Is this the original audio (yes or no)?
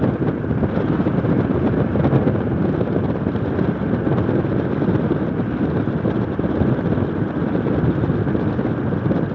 yes